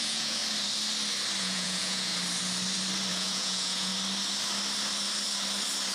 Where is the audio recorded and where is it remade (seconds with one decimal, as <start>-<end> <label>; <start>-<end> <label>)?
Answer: 0.0-0.4 remade; 0.4-1.4 recorded; 1.4-2.1 remade; 2.1-3.1 recorded; 3.1-3.9 remade; 3.9-5.9 recorded